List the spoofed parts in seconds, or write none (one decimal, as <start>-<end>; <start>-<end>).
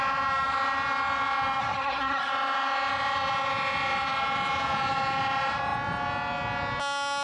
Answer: 1.6-2.3